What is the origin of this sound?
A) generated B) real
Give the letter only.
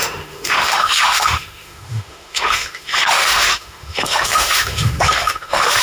A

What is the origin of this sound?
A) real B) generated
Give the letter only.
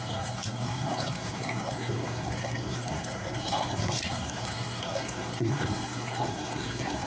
B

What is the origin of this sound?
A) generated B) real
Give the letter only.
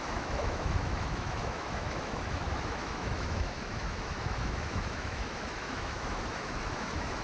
A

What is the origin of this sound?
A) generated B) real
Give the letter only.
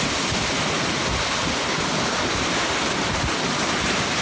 B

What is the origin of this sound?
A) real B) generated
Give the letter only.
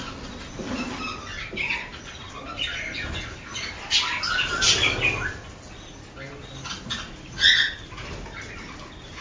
A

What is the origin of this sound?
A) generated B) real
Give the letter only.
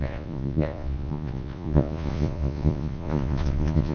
A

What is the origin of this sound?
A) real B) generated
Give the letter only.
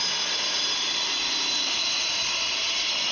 A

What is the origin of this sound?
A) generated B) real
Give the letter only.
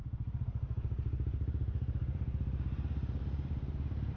A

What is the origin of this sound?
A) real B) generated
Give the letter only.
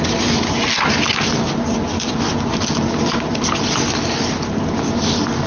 A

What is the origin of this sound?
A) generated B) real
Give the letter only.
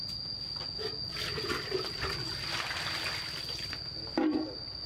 B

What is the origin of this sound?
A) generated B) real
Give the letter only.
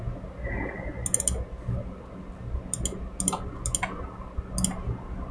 B